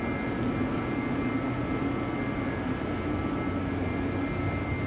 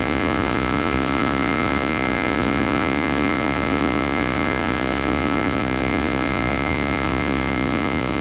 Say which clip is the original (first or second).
first